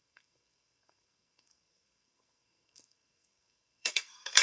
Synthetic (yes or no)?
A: yes